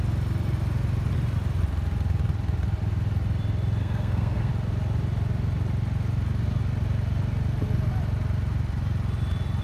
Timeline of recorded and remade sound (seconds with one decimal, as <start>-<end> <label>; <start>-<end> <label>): 0.0-3.8 recorded; 3.8-4.5 remade; 4.5-9.6 recorded